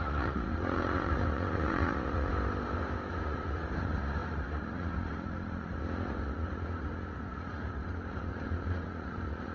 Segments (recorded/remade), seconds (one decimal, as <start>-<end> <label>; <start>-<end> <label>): 0.0-2.3 remade; 2.3-3.1 recorded; 3.1-9.5 remade